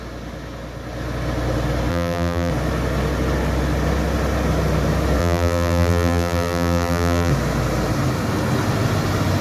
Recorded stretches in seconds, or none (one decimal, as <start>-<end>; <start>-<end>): 0.0-1.9; 2.5-5.2; 7.3-9.4